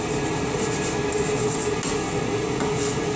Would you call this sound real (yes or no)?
yes